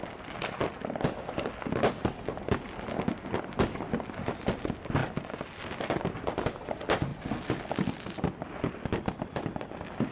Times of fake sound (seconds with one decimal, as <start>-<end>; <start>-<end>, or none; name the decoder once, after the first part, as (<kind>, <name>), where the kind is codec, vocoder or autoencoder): 5.0-5.6 (vocoder, BigVGAN v2); 7.1-8.5